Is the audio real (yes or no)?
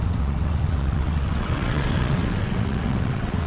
no